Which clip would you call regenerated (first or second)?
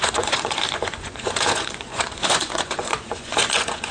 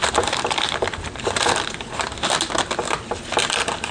first